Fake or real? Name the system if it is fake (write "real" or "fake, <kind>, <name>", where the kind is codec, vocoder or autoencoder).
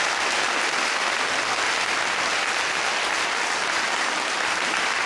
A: real